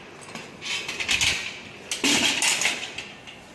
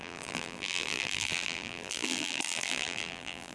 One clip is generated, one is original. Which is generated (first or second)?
second